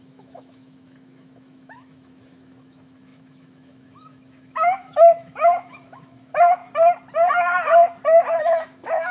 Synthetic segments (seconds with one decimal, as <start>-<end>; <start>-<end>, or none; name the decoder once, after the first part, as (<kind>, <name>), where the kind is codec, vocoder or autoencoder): 0.0-6.6 (autoencoder, DAC-VAE); 8.4-9.1